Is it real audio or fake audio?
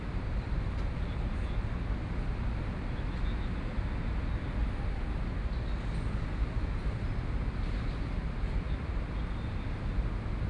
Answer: real